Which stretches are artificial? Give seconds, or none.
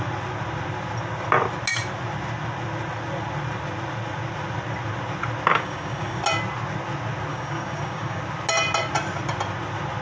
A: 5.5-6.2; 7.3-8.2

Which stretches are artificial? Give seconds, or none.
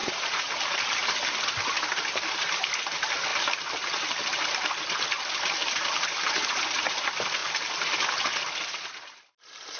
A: 0.0-0.5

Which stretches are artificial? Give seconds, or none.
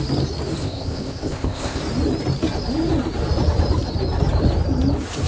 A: 0.6-1.8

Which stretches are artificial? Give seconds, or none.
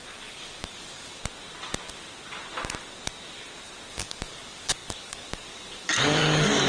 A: 0.0-1.2; 3.9-6.7